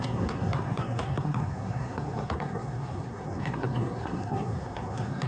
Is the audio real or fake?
fake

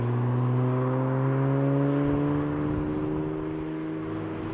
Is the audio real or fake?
real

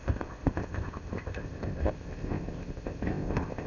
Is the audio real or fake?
fake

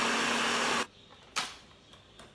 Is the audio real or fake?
real